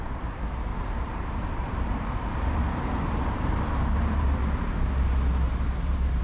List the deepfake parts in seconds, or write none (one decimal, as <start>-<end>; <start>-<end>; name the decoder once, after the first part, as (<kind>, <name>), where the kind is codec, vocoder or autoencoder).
0.7-4.4 (vocoder, BigVGAN v2); 5.5-6.2